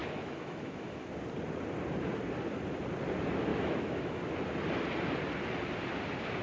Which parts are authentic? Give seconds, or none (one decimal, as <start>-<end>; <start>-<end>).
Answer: 1.1-3.5; 4.2-6.4